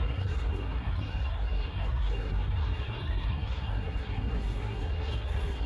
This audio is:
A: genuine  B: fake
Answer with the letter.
B